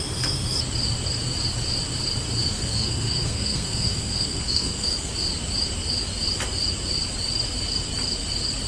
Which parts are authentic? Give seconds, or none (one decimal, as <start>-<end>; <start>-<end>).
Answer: 0.0-2.4; 5.1-8.7